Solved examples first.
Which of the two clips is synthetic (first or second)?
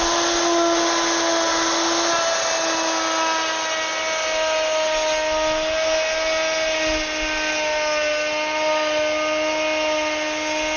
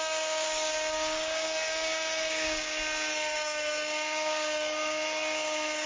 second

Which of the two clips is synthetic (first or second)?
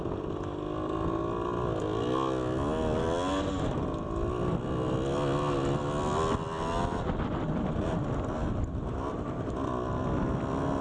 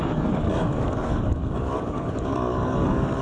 second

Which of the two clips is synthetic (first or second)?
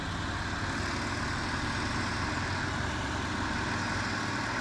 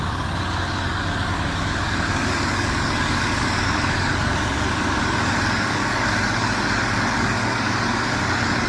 second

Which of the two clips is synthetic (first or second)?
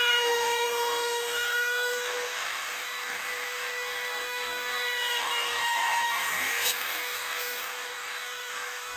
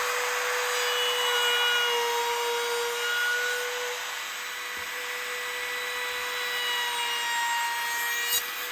first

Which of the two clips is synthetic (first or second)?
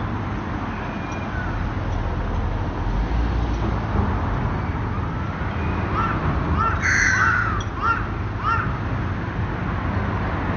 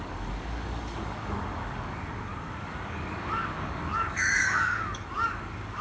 second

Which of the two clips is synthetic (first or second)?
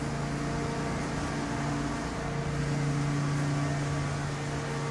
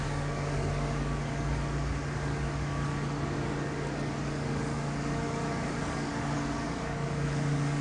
second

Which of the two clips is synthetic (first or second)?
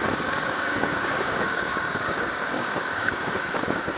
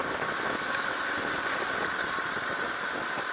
first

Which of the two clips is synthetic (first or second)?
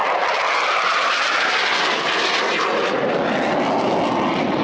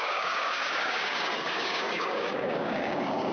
second